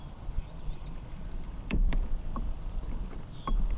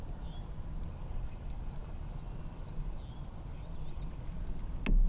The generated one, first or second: first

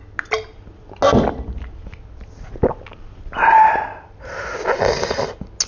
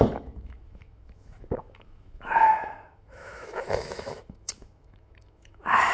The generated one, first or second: second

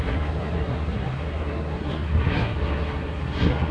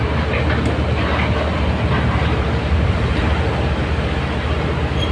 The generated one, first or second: first